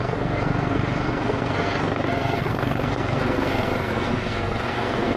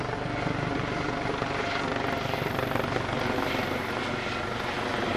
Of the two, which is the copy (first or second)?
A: first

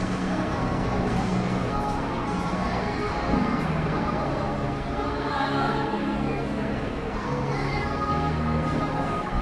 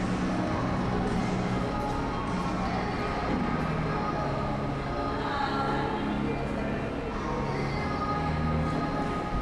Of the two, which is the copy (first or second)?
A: first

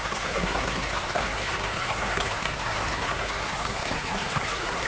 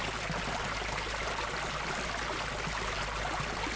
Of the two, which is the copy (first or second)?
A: first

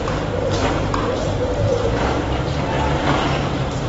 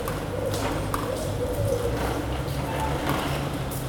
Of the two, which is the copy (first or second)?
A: first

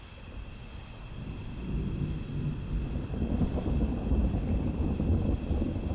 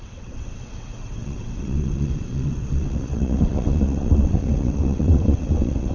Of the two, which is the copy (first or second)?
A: second